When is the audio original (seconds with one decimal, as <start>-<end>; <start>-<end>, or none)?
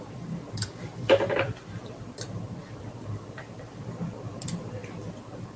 4.8-5.6